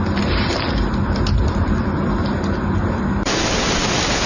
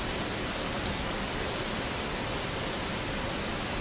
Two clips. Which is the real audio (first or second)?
second